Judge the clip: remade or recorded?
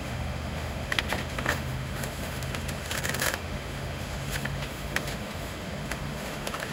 remade